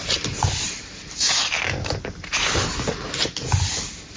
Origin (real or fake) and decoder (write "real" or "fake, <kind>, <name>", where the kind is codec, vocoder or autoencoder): real